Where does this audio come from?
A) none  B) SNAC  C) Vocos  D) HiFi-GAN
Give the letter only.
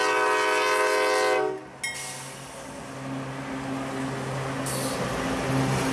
A